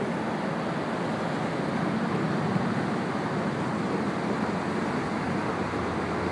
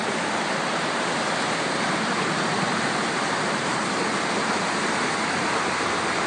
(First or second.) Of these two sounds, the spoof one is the second